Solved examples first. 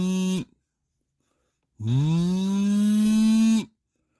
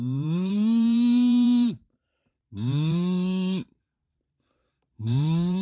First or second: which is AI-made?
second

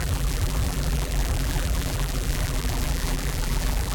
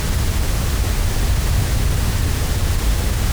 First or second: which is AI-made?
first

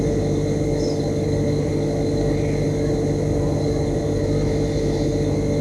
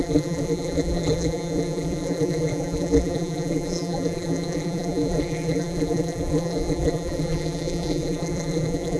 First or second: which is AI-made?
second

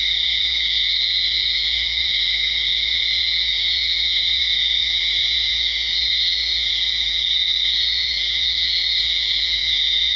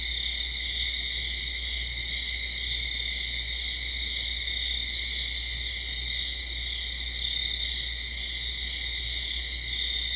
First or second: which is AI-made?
first